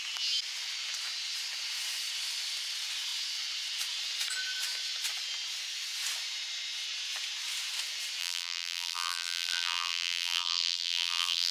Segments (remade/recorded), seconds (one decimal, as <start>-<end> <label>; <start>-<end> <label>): 0.0-8.2 recorded; 8.2-11.5 remade